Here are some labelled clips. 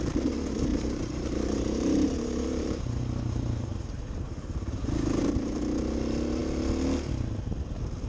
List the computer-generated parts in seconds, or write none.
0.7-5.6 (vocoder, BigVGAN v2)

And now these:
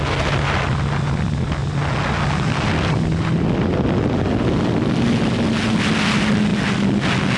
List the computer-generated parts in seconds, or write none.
none

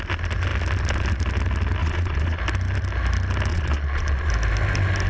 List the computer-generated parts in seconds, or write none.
1.8-2.4 (vocoder, Vocos); 3.5-4.3

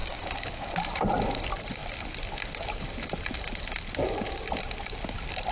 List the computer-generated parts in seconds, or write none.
0.0-0.7 (codec, DAC)

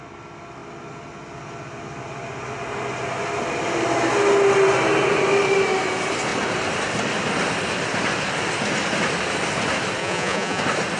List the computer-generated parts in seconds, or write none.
10.0-10.6 (vocoder, Vocos)

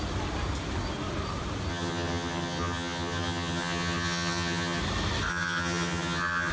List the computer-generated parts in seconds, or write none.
1.7-4.8 (vocoder, HiFi-GAN); 5.3-6.5